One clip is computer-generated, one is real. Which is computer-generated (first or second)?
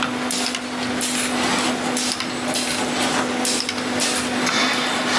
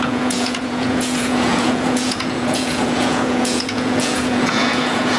second